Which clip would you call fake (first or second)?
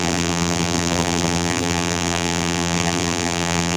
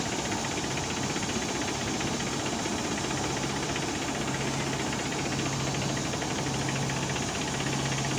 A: first